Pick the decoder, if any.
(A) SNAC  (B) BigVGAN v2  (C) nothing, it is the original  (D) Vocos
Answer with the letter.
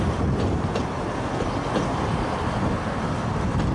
C